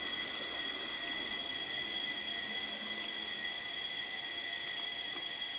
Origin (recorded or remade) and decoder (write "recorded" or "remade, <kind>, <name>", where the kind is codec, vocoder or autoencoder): recorded